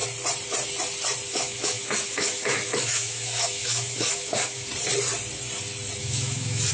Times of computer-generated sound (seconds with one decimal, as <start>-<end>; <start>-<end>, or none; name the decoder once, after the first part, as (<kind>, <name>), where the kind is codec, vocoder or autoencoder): 1.3-4.7 (autoencoder, DAC-VAE); 6.0-6.7